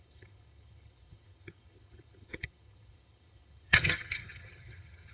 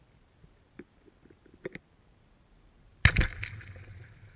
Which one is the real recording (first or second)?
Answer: second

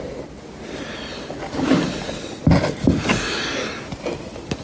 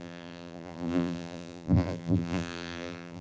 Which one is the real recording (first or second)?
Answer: first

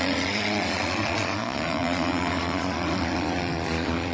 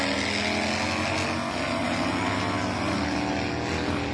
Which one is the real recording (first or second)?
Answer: second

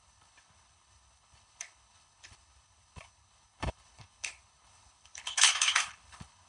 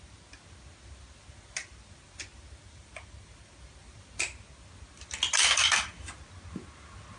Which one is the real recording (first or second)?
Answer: second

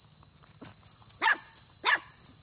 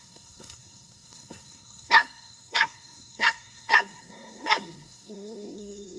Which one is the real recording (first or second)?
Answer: first